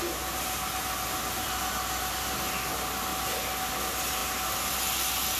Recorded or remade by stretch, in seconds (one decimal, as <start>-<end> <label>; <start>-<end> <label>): 0.0-5.4 recorded